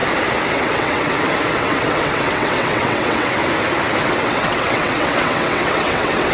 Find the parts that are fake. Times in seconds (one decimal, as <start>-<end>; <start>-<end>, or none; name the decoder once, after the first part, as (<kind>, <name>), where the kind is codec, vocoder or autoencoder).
0.5-1.1 (vocoder, WaveNeXt); 1.6-3.4; 4.0-6.3